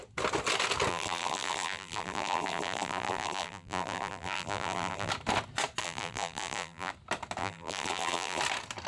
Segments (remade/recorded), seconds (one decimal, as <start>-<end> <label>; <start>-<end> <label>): 0.0-0.9 recorded; 0.9-5.1 remade; 5.1-5.8 recorded; 5.8-6.9 remade; 6.9-7.4 recorded; 7.4-8.4 remade; 8.4-8.9 recorded